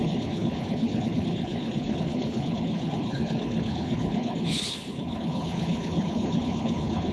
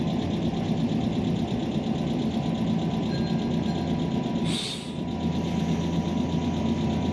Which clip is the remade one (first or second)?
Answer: first